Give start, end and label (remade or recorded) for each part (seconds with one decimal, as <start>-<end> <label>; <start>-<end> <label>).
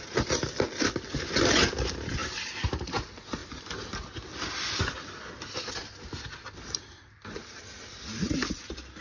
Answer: 0.0-2.2 recorded; 2.2-2.9 remade; 2.9-9.0 recorded